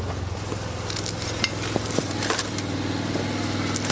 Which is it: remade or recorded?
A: recorded